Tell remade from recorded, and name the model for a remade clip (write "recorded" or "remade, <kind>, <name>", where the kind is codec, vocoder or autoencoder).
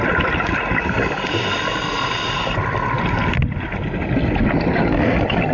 recorded